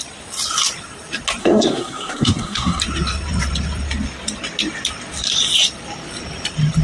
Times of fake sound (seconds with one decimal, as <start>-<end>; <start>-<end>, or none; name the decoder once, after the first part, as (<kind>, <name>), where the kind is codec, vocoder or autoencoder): 1.4-2.8 (codec, SNAC)